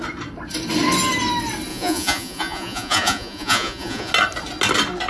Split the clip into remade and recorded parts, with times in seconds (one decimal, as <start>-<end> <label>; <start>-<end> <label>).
0.0-1.7 recorded; 1.7-4.1 remade; 4.1-5.1 recorded